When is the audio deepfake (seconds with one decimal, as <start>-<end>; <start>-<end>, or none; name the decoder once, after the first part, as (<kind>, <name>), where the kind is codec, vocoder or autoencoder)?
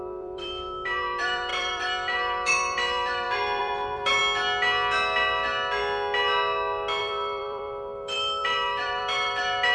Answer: 0.0-4.2 (vocoder, BigVGAN v2); 7.0-9.7